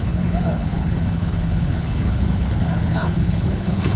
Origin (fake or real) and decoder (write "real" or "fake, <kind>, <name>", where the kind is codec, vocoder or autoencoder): fake, codec, HILCodec